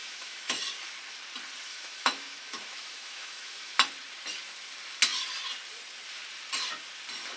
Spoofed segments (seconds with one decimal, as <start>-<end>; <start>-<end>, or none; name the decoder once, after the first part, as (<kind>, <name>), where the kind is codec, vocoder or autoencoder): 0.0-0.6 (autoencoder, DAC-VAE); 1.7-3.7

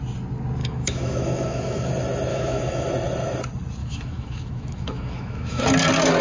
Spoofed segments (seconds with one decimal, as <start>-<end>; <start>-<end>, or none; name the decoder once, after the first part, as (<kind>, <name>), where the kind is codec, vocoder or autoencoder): 0.6-1.9 (autoencoder, DAC-VAE); 2.3-2.9; 3.8-5.6

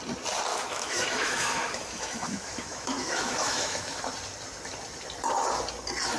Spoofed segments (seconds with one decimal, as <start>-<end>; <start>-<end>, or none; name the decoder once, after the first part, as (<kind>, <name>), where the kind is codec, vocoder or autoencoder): 0.5-4.0 (autoencoder, DAC-VAE)

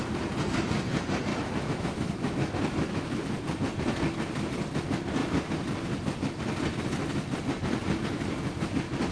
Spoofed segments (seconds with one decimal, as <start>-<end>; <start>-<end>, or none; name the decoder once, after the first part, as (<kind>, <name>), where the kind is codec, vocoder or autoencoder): 1.3-3.2 (autoencoder, DAC-VAE)